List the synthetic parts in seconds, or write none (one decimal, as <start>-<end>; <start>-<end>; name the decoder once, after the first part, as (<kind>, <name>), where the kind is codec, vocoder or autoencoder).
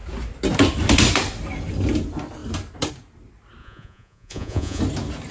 3.6-4.8 (vocoder, Vocos)